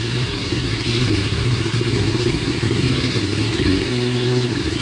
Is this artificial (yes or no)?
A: yes